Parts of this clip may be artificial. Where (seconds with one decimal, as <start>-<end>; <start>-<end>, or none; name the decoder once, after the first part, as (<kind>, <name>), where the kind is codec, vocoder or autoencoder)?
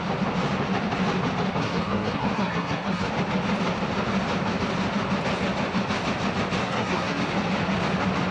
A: 1.6-3.1 (codec, SNAC); 6.6-7.2